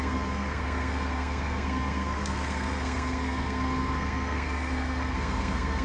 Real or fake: fake